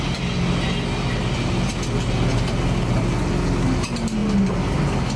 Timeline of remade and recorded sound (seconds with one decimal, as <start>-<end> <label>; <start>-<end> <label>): 0.0-5.2 recorded